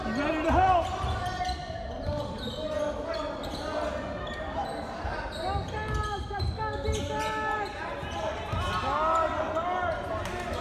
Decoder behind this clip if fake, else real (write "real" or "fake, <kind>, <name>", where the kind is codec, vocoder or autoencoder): real